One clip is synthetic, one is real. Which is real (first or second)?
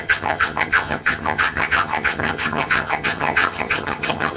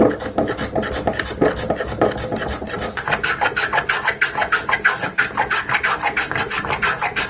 second